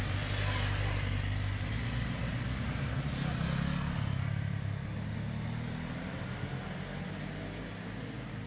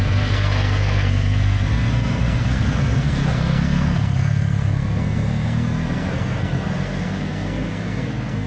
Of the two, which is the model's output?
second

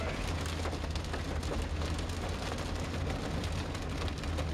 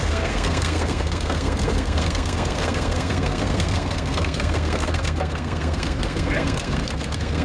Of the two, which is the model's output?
second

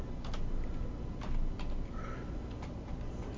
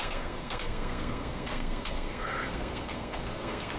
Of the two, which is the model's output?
second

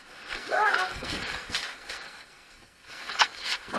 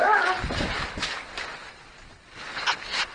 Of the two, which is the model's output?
first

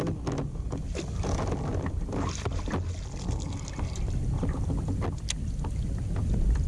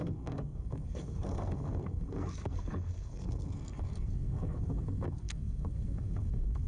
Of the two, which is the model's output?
second